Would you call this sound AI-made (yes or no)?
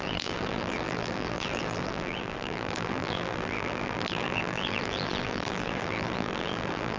yes